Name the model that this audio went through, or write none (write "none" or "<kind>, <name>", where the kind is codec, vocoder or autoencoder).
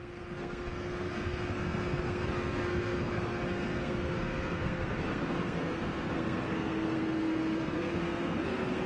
codec, SNAC